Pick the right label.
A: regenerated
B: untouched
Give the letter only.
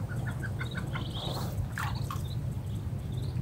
B